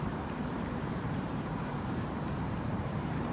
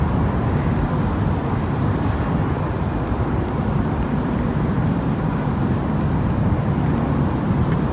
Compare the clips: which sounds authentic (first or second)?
second